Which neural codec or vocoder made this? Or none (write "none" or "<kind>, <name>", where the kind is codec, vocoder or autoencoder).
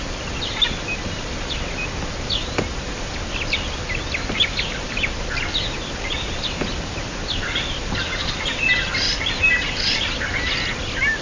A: none